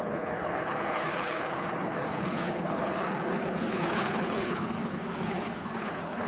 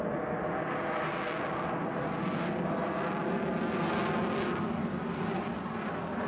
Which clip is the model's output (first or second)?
first